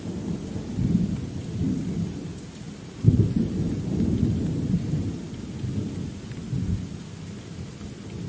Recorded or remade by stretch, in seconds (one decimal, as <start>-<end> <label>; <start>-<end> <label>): 0.0-8.3 recorded